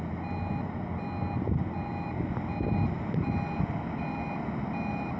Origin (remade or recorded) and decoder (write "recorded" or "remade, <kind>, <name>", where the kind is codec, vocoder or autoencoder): recorded